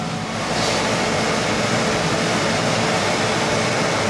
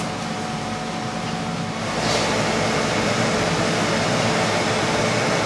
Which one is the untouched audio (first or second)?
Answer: second